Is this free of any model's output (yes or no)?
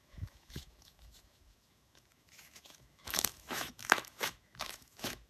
no